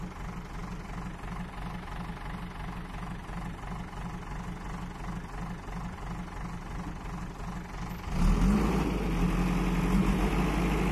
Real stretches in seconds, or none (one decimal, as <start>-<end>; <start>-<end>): 0.0-10.9